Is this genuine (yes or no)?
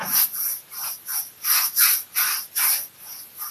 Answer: yes